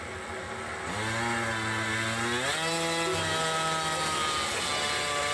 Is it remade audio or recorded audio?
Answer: recorded